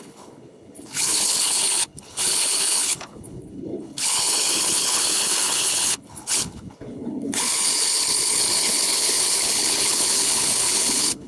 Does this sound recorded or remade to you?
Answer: remade